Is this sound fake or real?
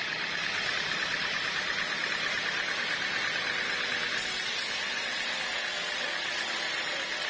real